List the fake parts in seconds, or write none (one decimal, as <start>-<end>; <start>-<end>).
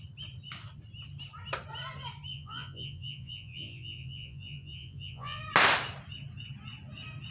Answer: 2.3-5.4